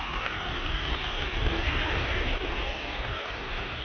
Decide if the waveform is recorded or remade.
remade